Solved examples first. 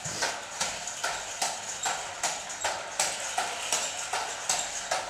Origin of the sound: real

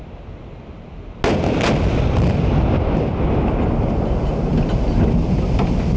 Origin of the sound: real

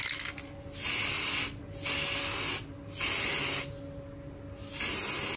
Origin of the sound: real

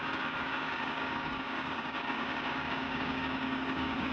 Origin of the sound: fake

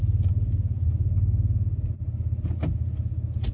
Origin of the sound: real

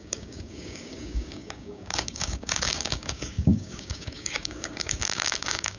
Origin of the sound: fake